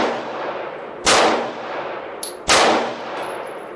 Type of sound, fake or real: real